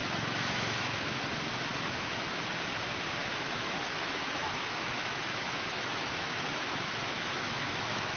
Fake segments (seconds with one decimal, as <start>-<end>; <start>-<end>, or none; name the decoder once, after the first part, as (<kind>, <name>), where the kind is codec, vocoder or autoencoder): 0.0-1.2 (autoencoder, DAC-VAE); 1.7-2.4; 3.2-8.2